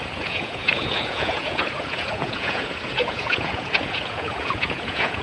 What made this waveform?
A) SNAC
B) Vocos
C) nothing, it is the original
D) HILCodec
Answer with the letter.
B